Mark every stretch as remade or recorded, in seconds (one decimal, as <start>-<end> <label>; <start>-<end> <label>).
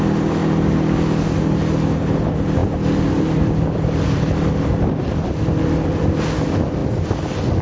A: 0.0-7.6 recorded